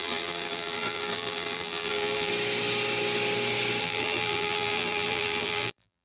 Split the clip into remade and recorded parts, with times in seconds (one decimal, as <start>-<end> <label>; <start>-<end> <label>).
0.0-2.3 remade; 2.3-3.8 recorded; 3.8-6.0 remade